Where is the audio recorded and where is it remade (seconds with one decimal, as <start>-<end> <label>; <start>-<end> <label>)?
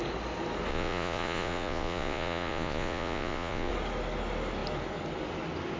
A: 0.0-0.7 recorded; 0.7-3.7 remade; 3.7-5.8 recorded